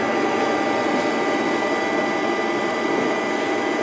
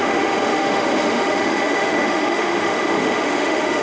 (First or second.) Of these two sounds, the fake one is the second